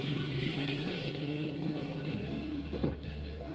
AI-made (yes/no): yes